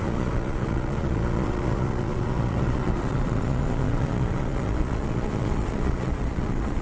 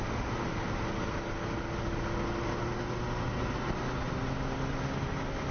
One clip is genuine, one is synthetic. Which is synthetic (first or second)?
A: first